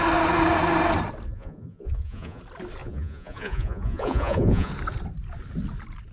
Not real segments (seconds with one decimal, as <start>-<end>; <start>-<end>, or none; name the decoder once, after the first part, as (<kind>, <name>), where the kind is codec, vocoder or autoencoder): 1.3-2.4 (vocoder, Vocos); 2.8-4.7